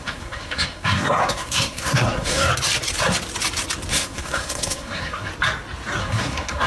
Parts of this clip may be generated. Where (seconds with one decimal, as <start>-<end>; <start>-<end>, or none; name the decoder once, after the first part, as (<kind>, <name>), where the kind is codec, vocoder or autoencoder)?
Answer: 0.0-2.5 (codec, SNAC); 3.9-5.3; 6.0-6.7